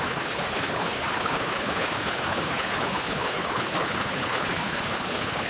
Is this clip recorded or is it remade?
remade